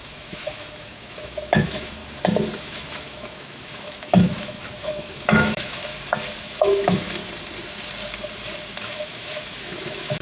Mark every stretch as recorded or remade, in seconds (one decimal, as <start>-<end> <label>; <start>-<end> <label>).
0.0-2.0 remade; 2.0-2.6 recorded; 2.6-5.9 remade; 5.9-6.4 recorded; 6.4-7.2 remade; 7.2-8.8 recorded; 8.8-10.2 remade